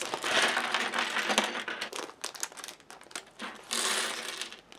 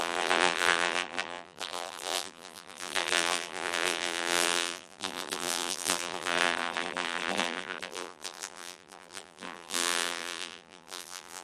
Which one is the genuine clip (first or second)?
first